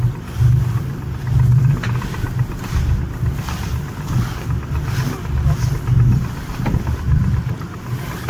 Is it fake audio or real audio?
real